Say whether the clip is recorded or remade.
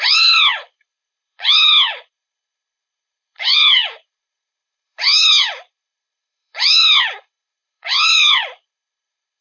remade